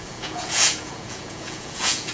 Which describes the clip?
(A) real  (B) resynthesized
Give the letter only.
B